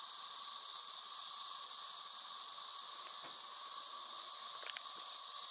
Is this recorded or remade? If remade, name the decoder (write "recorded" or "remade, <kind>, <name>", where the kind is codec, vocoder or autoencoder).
recorded